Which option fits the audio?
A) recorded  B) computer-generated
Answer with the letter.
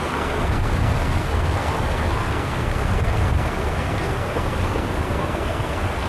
B